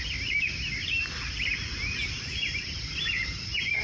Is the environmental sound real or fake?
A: real